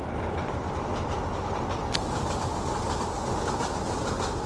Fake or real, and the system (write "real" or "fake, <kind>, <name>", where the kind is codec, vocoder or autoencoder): real